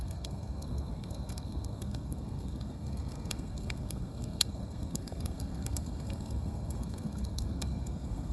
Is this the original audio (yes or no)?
no